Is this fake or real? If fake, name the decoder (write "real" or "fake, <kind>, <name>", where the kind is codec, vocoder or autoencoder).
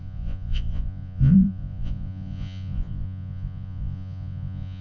fake, vocoder, Vocos